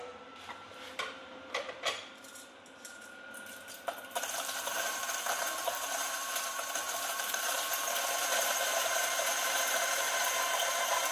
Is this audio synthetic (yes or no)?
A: yes